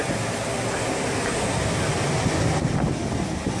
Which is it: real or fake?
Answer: real